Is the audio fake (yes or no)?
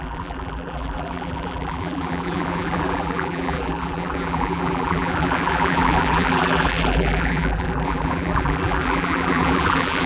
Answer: yes